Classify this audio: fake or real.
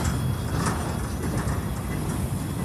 real